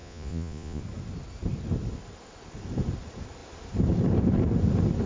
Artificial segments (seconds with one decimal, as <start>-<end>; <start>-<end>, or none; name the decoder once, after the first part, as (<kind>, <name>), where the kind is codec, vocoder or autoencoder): 0.0-0.8 (vocoder, Vocos)